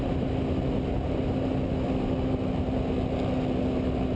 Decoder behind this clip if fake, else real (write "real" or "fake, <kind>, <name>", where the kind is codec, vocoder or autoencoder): real